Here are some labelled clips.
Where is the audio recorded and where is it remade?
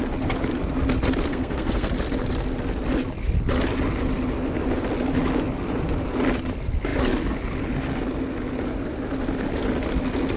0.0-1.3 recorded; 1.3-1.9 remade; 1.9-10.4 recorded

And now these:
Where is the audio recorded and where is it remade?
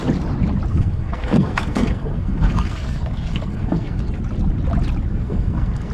0.0-0.7 recorded; 0.7-4.2 remade; 4.2-5.1 recorded; 5.1-5.9 remade